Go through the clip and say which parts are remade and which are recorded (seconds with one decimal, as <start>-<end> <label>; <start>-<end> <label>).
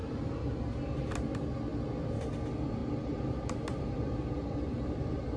0.0-0.6 remade; 0.6-2.8 recorded; 2.8-5.0 remade; 5.0-5.4 recorded